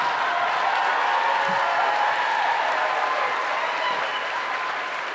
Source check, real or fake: real